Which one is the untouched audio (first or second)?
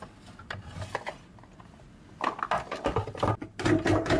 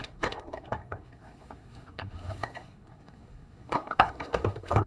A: first